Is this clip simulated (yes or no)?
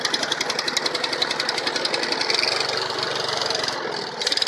no